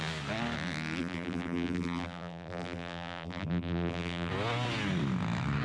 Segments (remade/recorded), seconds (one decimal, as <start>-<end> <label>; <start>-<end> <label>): 0.0-1.0 recorded; 1.0-4.3 remade; 4.3-5.6 recorded